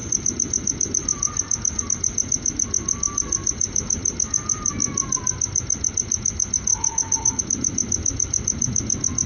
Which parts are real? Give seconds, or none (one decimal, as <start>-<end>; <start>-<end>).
0.0-6.7; 7.4-9.3